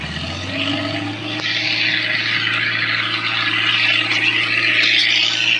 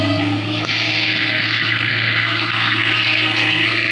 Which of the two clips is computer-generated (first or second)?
second